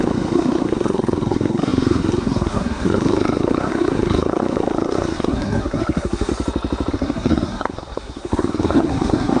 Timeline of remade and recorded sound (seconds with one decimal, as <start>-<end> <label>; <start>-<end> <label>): 0.0-6.3 remade; 6.3-6.9 recorded; 6.9-9.4 remade